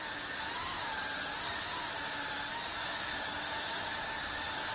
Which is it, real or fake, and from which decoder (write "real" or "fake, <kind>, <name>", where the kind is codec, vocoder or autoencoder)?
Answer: real